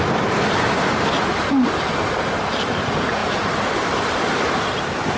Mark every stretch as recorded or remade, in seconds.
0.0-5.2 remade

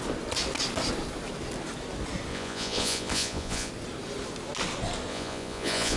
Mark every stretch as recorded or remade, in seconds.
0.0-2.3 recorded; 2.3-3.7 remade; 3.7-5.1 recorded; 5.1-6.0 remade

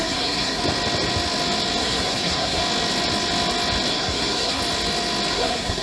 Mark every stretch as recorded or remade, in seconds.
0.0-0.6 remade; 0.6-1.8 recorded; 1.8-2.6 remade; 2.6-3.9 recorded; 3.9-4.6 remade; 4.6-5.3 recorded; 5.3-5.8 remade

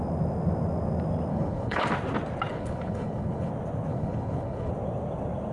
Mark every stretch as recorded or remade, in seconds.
0.0-1.3 recorded; 1.3-1.8 remade; 1.8-2.5 recorded; 2.5-3.5 remade; 3.5-3.9 recorded; 3.9-4.7 remade; 4.7-5.5 recorded

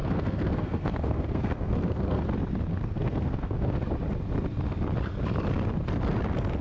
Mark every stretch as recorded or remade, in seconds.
0.0-2.2 remade; 2.2-2.7 recorded; 2.7-3.8 remade; 3.8-6.6 recorded

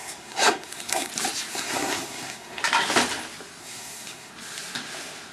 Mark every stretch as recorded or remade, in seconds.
0.0-1.1 remade; 1.1-1.5 recorded; 1.5-2.6 remade; 2.6-3.6 recorded; 3.6-4.3 remade; 4.3-5.3 recorded

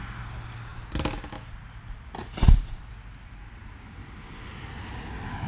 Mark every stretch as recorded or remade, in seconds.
0.0-5.5 recorded